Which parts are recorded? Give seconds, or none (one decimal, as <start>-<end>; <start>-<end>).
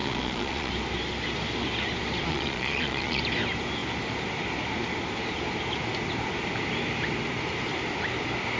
0.7-2.3; 3.2-8.6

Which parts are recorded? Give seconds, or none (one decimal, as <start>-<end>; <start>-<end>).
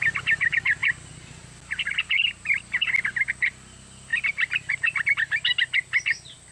0.0-6.5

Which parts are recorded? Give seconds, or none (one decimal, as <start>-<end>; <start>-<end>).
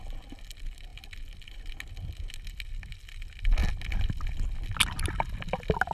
0.0-5.9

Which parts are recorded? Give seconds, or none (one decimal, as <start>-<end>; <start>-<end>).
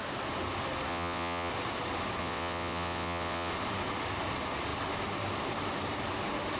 0.0-0.9; 1.5-2.2; 3.5-6.6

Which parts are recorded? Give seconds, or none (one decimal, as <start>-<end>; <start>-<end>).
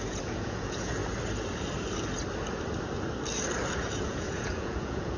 1.0-3.9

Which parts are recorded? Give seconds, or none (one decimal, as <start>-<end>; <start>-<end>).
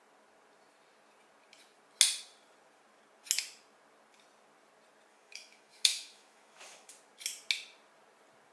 0.0-5.1; 6.9-8.5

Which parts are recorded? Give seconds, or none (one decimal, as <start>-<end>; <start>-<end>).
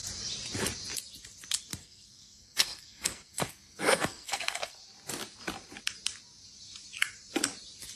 0.0-1.8; 4.8-8.0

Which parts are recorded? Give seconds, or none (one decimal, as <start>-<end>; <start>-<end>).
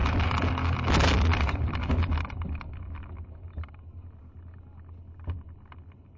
0.0-6.2